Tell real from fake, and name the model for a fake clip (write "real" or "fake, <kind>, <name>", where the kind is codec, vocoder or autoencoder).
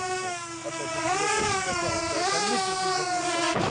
fake, codec, DAC